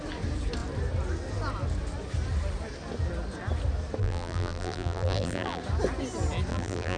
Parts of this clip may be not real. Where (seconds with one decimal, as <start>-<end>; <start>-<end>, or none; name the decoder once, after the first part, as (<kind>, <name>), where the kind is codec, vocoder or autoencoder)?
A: 4.0-5.6 (vocoder, BigVGAN v2); 6.5-7.0